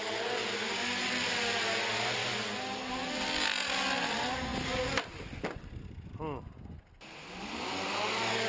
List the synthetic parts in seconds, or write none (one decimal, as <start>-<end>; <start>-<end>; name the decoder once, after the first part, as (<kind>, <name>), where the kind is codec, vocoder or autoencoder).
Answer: none